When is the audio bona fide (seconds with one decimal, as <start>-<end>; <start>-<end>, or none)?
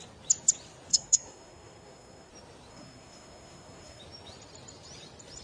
0.0-0.9; 2.3-2.7; 4.0-5.4